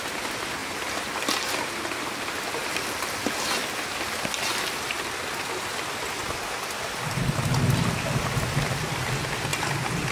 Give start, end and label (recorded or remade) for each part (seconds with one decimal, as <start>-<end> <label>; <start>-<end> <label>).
0.0-10.1 recorded